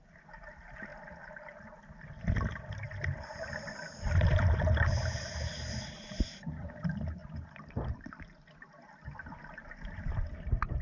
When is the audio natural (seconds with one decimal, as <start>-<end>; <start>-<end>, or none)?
0.0-10.8